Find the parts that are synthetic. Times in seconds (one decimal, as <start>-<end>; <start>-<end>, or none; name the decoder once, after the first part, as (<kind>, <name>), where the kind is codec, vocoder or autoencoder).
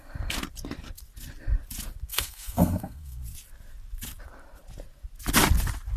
2.1-3.2 (codec, SNAC)